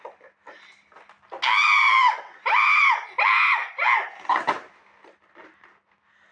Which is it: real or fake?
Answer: real